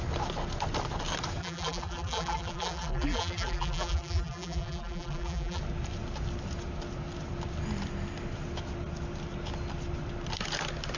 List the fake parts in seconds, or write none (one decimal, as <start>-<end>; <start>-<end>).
1.4-5.6